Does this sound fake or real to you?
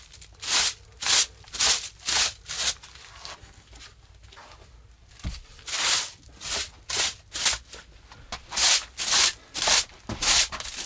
real